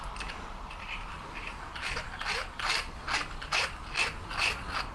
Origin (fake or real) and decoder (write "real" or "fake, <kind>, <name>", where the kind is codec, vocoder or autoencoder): real